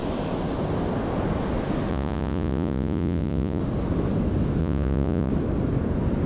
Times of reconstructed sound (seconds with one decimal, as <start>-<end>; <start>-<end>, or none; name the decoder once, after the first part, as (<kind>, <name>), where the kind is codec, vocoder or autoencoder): 1.9-3.6 (vocoder, Vocos); 4.6-5.3